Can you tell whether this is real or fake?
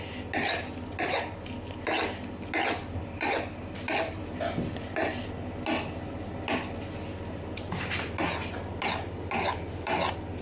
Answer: real